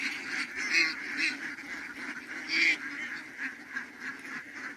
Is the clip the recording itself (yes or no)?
yes